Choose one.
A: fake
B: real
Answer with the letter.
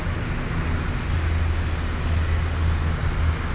B